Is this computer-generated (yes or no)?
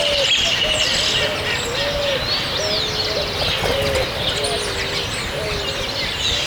no